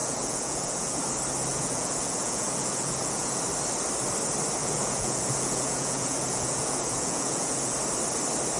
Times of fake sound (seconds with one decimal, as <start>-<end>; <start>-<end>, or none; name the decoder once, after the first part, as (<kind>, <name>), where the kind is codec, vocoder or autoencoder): 0.0-1.0 (vocoder, Vocos); 1.5-3.4; 4.6-7.7